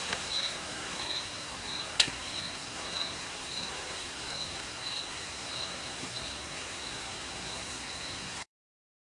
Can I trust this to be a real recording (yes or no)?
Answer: no